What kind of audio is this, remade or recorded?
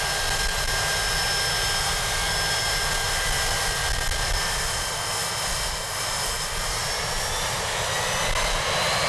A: recorded